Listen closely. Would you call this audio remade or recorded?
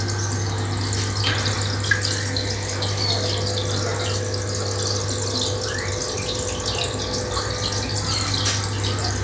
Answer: recorded